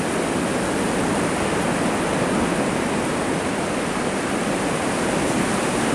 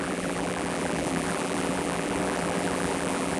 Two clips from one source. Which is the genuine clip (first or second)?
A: first